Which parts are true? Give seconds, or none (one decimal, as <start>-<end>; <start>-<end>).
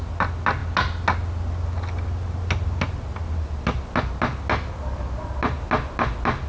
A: 0.0-6.5